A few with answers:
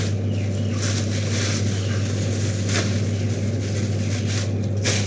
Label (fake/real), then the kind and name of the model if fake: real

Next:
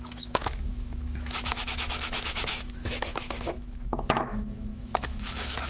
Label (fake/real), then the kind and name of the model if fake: fake, autoencoder, DAC-VAE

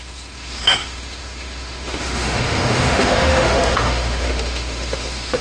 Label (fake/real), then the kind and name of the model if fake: fake, autoencoder, DAC-VAE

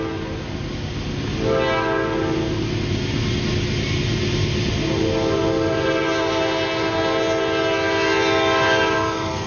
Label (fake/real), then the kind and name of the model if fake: real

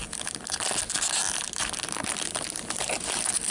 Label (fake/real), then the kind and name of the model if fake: real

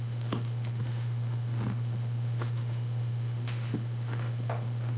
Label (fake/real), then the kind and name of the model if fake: fake, autoencoder, DAC-VAE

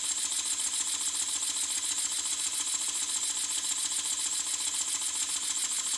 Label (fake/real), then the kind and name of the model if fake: real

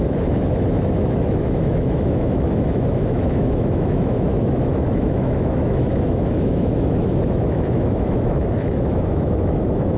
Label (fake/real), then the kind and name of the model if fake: fake, autoencoder, DAC-VAE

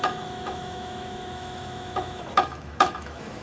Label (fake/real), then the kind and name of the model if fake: fake, autoencoder, DAC-VAE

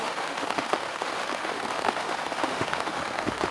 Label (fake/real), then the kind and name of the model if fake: fake, autoencoder, DAC-VAE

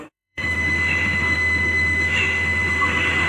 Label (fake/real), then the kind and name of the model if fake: fake, autoencoder, DAC-VAE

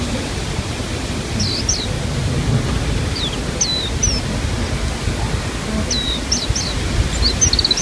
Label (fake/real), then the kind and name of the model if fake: real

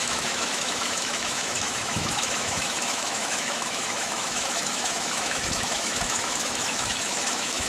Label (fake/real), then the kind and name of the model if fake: fake, autoencoder, DAC-VAE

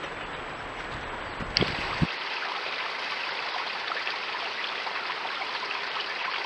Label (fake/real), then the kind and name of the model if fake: real